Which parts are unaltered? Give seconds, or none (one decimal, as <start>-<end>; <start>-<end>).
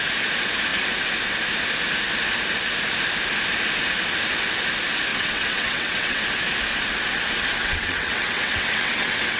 0.0-5.1; 6.2-7.6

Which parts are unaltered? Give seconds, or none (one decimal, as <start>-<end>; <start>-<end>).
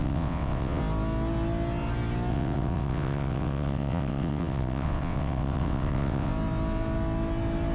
0.8-2.3; 6.3-7.7